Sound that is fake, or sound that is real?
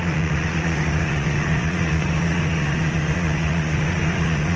fake